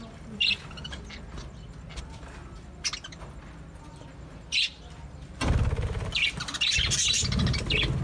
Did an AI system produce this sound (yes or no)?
no